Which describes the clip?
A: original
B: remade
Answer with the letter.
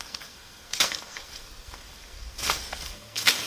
B